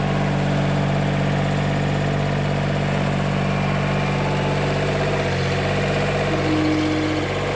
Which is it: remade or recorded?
recorded